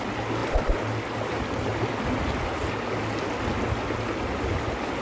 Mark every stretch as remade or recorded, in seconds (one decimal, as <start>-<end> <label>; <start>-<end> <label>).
0.0-5.0 recorded

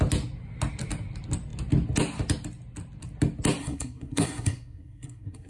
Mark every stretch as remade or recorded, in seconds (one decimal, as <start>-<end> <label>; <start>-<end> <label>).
0.0-3.6 recorded; 3.6-5.5 remade

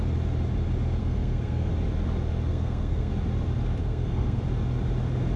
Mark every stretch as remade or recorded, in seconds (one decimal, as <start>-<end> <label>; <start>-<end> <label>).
0.0-1.0 recorded; 1.0-1.7 remade; 1.7-2.5 recorded; 2.5-3.1 remade; 3.1-3.8 recorded; 3.8-4.4 remade; 4.4-5.4 recorded